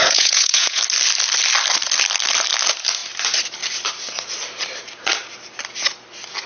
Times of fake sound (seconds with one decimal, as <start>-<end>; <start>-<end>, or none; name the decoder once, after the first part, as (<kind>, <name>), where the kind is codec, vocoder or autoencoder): 0.0-0.8 (vocoder, Vocos)